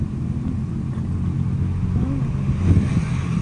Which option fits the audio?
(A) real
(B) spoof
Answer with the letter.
A